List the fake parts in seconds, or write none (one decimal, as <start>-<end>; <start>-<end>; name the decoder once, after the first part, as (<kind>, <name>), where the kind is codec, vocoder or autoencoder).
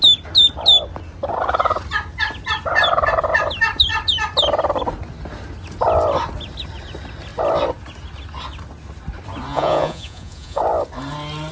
9.5-10.6 (vocoder, Vocos)